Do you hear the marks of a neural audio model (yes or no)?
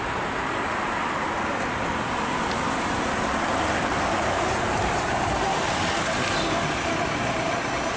no